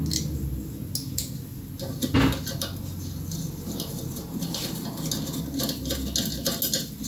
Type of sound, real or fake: real